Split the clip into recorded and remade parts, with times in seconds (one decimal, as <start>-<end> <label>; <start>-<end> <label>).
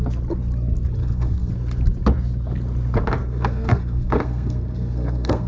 0.0-1.0 recorded; 1.0-1.5 remade; 1.5-3.2 recorded; 3.2-5.5 remade